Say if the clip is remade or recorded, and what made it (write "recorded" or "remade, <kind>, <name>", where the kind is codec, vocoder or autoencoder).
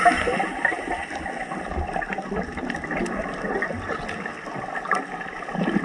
recorded